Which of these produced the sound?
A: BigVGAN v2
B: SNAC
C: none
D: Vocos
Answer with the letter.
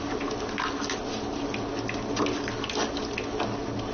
C